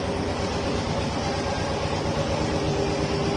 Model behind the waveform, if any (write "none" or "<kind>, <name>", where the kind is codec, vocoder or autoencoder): none